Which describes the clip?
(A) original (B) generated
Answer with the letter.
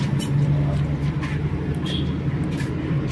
A